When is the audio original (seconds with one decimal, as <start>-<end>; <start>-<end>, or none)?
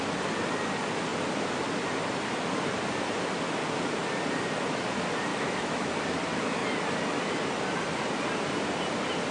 0.0-5.3; 5.9-9.3